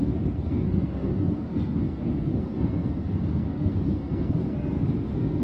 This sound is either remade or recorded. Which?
remade